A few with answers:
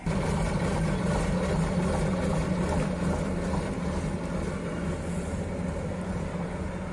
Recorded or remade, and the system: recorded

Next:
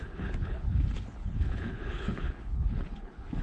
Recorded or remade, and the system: remade, codec, HILCodec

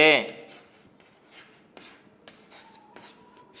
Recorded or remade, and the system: recorded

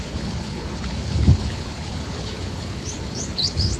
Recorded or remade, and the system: remade, codec, HILCodec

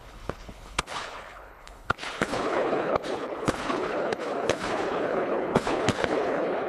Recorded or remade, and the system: remade, codec, HILCodec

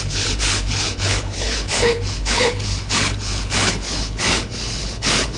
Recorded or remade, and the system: remade, codec, HILCodec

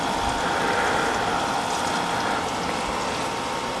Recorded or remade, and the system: recorded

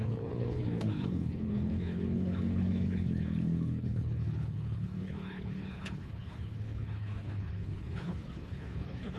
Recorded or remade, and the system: remade, codec, HILCodec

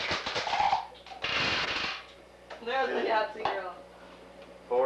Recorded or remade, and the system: recorded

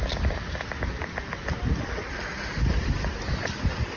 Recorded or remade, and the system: recorded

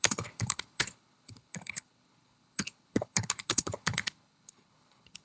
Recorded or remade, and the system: remade, codec, HILCodec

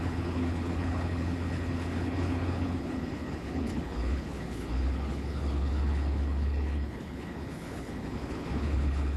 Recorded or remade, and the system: remade, codec, HILCodec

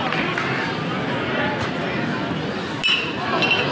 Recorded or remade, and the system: recorded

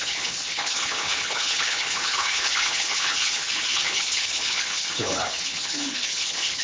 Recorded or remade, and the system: remade, codec, HILCodec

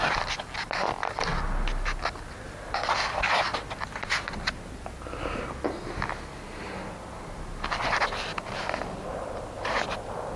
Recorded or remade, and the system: recorded